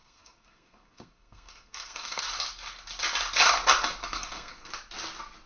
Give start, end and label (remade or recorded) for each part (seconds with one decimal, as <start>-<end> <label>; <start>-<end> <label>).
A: 0.0-2.2 remade; 2.2-4.0 recorded; 4.0-4.7 remade; 4.7-5.5 recorded